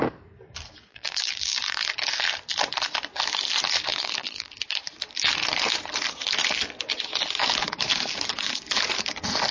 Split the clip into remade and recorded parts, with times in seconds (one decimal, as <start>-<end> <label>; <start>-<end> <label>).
0.0-0.9 recorded; 0.9-1.9 remade; 1.9-3.9 recorded; 3.9-4.5 remade; 4.5-9.5 recorded

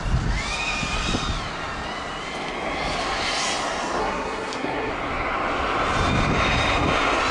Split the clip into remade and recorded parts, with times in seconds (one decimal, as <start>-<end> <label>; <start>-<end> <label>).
0.0-4.0 recorded; 4.0-4.9 remade; 4.9-7.3 recorded

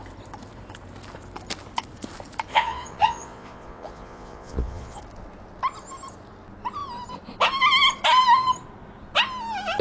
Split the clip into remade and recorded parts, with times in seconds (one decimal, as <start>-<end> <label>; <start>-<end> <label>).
0.0-2.5 recorded; 2.5-5.0 remade; 5.0-9.8 recorded